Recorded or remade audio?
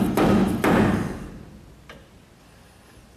recorded